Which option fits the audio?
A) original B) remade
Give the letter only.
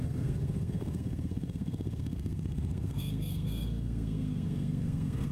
B